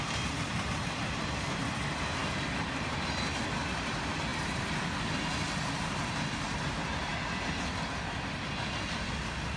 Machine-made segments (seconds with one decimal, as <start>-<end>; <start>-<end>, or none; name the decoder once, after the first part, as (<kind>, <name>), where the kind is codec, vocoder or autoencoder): none